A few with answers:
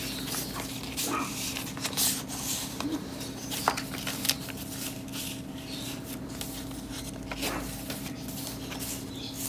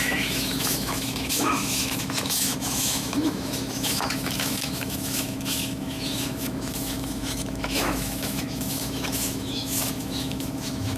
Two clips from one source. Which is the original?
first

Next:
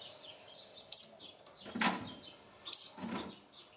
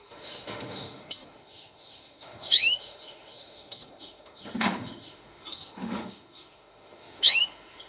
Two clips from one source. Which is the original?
first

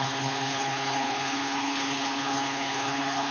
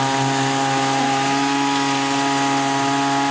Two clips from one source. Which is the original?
second